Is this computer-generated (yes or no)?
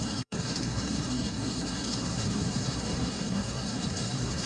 yes